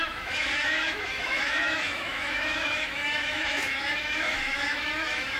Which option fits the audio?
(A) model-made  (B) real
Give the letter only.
A